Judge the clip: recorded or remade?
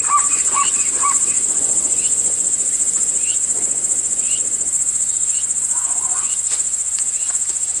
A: remade